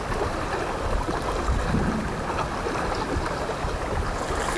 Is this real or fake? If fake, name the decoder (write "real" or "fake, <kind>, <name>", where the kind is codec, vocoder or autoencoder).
real